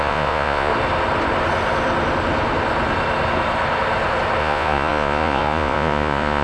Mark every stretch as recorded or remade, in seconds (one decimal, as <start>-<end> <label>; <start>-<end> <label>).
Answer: 0.0-0.7 remade; 0.7-4.4 recorded; 4.4-6.4 remade

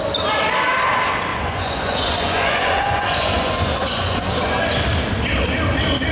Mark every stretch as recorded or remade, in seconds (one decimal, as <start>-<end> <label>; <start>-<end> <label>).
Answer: 0.0-1.3 recorded; 1.3-4.6 remade; 4.6-6.1 recorded

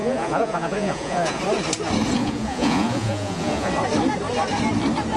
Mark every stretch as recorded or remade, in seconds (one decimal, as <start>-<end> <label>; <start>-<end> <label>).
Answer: 0.0-1.4 remade; 1.4-2.2 recorded; 2.2-3.7 remade; 3.7-5.2 recorded

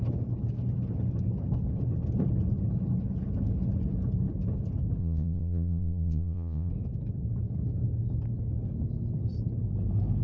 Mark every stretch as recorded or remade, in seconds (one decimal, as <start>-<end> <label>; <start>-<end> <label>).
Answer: 0.0-5.0 recorded; 5.0-6.7 remade; 6.7-10.2 recorded